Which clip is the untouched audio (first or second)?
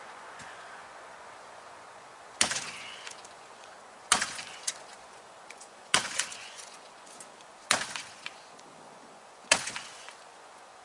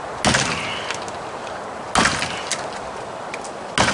second